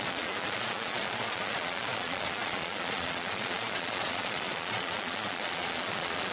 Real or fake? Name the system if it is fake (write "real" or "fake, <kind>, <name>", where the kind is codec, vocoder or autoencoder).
fake, vocoder, Vocos